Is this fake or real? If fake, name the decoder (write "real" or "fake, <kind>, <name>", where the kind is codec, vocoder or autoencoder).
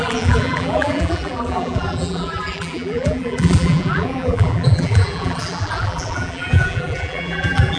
fake, vocoder, BigVGAN v2